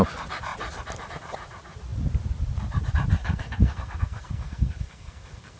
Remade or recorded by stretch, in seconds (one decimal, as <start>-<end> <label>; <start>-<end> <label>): 0.0-3.2 recorded; 3.2-5.6 remade